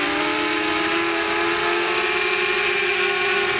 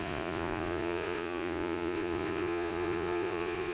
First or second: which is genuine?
first